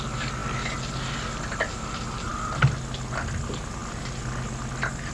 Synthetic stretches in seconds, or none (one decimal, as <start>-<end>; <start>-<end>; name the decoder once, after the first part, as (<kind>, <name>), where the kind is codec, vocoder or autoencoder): none